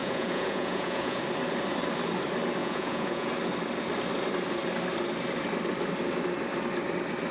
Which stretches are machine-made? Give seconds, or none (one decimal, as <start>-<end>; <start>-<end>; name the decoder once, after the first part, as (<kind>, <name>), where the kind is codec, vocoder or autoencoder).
0.0-1.2 (vocoder, Vocos); 2.6-3.3